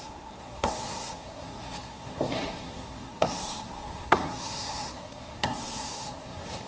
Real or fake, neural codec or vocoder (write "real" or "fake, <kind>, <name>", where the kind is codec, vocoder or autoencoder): fake, codec, SNAC